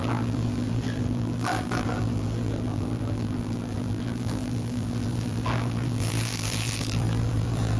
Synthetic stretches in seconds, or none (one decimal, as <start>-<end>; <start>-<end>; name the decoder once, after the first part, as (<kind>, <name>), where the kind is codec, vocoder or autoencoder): 0.0-7.8 (vocoder, BigVGAN v2)